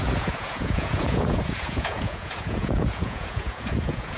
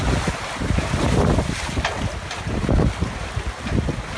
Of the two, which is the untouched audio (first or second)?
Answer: second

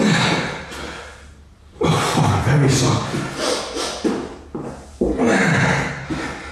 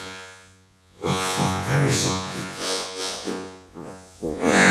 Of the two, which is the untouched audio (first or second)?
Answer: first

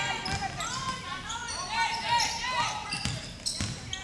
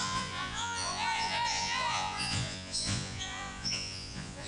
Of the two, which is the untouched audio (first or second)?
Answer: first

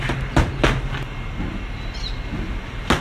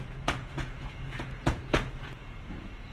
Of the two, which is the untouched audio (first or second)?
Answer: first